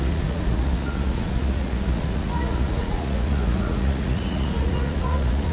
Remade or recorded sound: remade